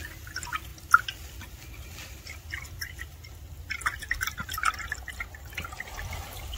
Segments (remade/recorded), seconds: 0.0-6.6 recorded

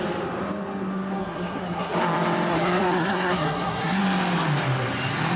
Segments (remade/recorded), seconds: 0.0-1.2 recorded; 1.2-1.9 remade; 1.9-2.5 recorded; 2.5-4.0 remade; 4.0-5.4 recorded

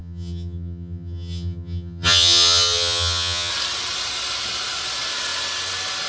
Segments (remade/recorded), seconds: 0.0-3.5 remade; 3.5-6.1 recorded

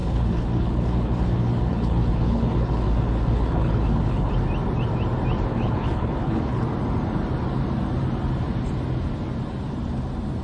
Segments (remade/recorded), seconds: 0.0-4.3 remade; 4.3-5.5 recorded; 5.5-6.6 remade; 6.6-10.4 recorded

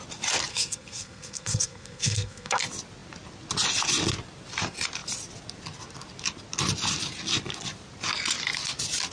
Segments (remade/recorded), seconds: 0.0-0.5 recorded; 0.5-2.6 remade; 2.6-9.1 recorded